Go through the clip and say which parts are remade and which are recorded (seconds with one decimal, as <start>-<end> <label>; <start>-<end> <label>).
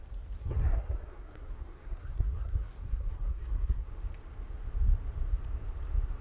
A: 0.0-0.4 recorded; 0.4-3.9 remade; 3.9-6.2 recorded